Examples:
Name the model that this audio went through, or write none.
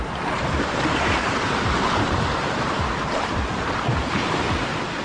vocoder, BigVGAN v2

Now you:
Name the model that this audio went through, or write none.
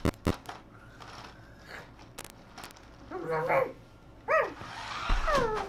none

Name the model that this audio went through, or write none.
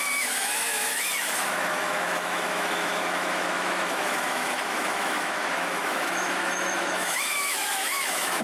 autoencoder, DAC-VAE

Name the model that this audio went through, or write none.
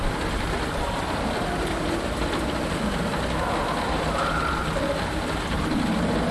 none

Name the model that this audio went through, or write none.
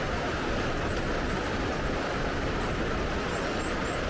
vocoder, BigVGAN v2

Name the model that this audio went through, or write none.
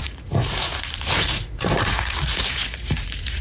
vocoder, Vocos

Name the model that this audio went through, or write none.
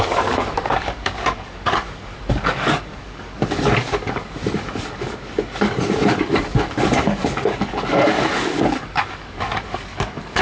codec, DAC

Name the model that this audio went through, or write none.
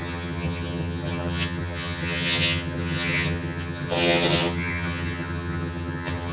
vocoder, HiFi-GAN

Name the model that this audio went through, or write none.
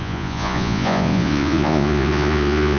vocoder, Vocos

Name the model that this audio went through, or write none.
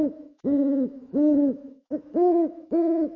autoencoder, DAC-VAE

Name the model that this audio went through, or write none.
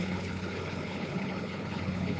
codec, HILCodec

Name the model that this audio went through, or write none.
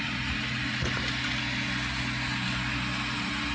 none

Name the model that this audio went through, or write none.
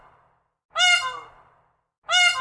none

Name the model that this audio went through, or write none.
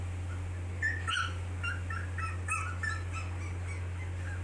none